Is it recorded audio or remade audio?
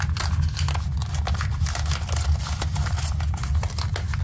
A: recorded